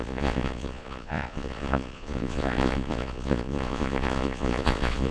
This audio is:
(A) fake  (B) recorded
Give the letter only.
A